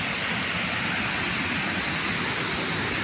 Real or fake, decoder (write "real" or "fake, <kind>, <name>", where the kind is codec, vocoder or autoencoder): real